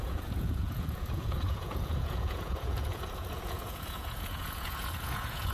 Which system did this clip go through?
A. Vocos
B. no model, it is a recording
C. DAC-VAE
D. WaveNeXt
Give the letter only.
A